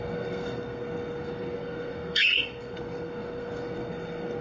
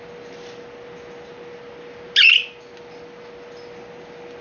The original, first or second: second